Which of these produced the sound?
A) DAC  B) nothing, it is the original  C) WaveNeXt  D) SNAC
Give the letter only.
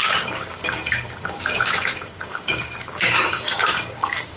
A